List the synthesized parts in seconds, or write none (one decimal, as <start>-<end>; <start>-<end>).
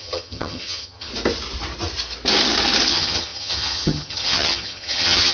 0.0-1.1; 2.9-5.3